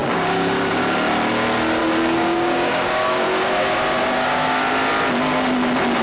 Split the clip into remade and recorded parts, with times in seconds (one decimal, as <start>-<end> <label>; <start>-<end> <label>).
0.0-0.8 remade; 0.8-1.8 recorded; 1.8-4.7 remade; 4.7-6.0 recorded